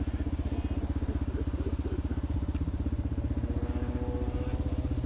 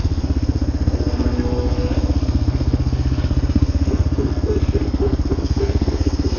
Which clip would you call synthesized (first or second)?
second